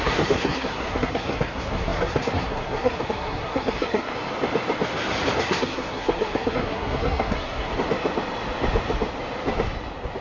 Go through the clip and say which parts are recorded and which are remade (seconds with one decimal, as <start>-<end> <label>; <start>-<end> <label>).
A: 0.0-4.1 remade; 4.1-5.4 recorded; 5.4-7.7 remade; 7.7-10.2 recorded